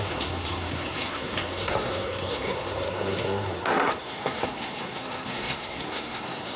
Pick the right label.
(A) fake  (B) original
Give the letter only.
A